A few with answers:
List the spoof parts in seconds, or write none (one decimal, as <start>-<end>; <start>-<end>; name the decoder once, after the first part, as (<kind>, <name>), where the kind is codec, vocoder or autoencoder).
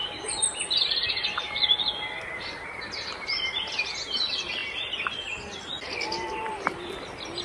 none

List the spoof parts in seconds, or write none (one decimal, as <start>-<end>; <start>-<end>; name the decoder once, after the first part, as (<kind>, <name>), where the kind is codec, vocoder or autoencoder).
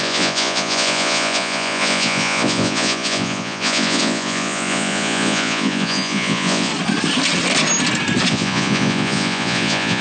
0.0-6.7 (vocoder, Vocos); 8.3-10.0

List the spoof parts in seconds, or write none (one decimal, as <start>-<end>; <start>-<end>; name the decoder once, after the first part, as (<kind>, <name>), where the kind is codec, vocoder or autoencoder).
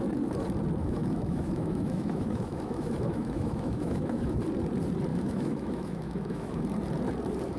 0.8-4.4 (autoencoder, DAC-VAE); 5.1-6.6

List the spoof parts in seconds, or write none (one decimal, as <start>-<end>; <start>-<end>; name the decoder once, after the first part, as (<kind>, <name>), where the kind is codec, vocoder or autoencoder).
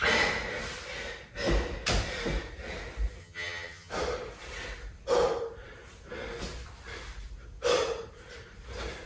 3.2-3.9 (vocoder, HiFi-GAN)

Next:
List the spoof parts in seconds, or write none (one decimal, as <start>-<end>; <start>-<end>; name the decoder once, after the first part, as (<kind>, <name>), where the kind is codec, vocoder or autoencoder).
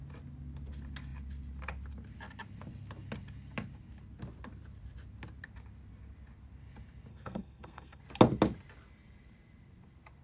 7.1-8.0 (codec, SNAC)